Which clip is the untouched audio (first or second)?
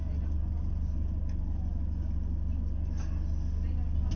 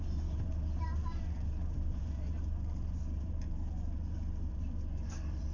first